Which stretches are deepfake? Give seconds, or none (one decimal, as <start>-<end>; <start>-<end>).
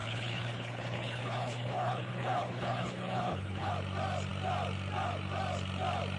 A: 0.0-3.7